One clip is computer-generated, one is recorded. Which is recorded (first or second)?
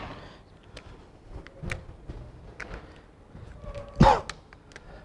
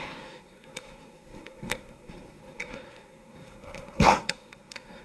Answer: first